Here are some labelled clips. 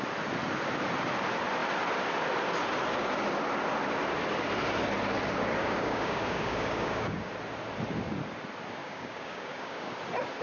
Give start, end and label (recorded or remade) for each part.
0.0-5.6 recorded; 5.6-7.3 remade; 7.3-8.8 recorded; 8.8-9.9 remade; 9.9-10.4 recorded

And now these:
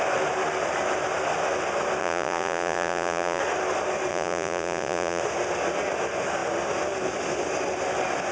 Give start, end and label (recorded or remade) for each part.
0.0-2.0 recorded; 2.0-3.4 remade; 3.4-4.1 recorded; 4.1-5.2 remade; 5.2-8.3 recorded

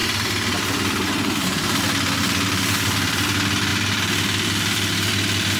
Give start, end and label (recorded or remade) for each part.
0.0-1.8 remade; 1.8-5.6 recorded

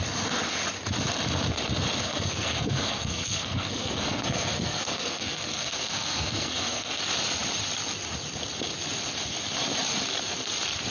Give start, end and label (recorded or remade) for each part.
0.0-2.0 recorded; 2.0-7.0 remade; 7.0-10.9 recorded

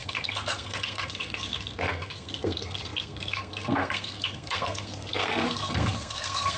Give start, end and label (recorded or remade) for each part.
0.0-6.6 remade

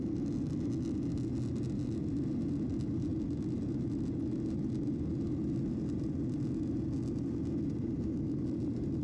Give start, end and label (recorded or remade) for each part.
0.0-9.0 recorded

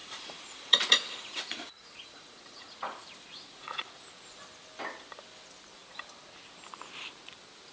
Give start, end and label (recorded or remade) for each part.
0.0-4.0 remade; 4.0-7.7 recorded